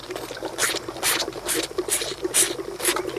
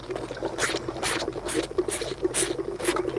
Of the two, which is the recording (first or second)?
second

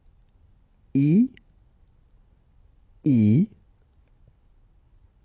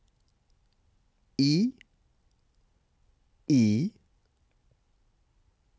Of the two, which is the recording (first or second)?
second